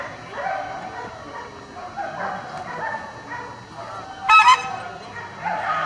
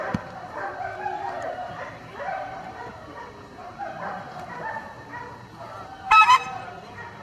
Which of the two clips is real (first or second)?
first